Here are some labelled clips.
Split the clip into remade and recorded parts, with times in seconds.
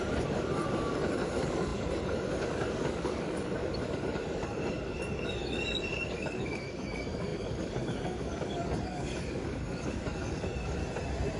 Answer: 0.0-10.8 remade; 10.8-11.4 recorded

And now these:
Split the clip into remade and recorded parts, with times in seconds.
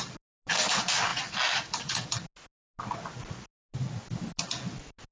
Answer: 0.0-5.1 recorded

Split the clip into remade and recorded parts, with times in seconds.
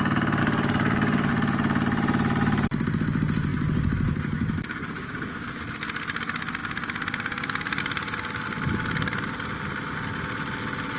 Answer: 0.0-0.4 recorded; 0.4-1.3 remade; 1.3-3.5 recorded; 3.5-5.6 remade; 5.6-11.0 recorded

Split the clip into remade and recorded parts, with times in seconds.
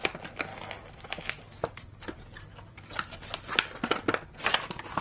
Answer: 0.0-5.0 recorded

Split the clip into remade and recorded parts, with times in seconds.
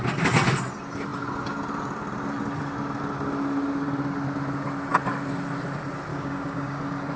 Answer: 0.0-6.1 recorded; 6.1-6.8 remade; 6.8-7.2 recorded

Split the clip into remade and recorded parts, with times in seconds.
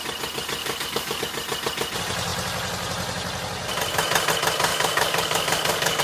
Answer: 0.0-0.6 recorded; 0.6-1.2 remade; 1.2-4.7 recorded; 4.7-6.0 remade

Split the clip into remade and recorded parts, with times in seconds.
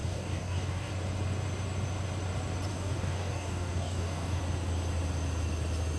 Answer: 0.0-0.9 remade; 0.9-2.7 recorded; 2.7-4.4 remade; 4.4-6.0 recorded